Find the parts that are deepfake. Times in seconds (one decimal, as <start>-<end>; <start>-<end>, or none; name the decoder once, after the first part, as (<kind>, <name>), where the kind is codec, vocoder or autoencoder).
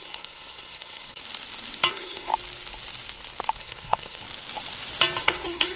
0.0-1.2 (codec, SNAC); 1.9-2.3; 3.6-4.2; 5.2-5.8